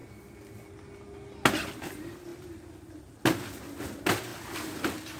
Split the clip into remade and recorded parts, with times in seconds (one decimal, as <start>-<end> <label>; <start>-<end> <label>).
0.0-4.3 recorded; 4.3-5.2 remade